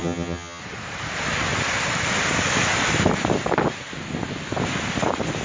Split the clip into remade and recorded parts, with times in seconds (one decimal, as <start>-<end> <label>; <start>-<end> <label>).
0.0-0.6 remade; 0.6-5.4 recorded